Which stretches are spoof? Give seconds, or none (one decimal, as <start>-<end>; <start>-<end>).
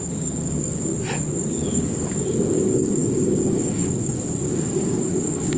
0.0-0.9; 1.5-5.6